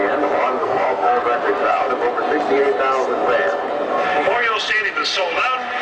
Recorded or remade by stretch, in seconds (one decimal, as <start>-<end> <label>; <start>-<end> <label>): 0.0-0.6 recorded; 0.6-1.2 remade; 1.2-5.8 recorded